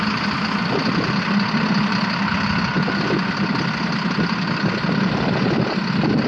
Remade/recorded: recorded